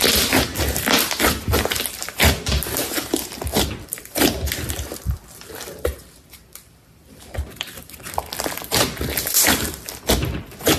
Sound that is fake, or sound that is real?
real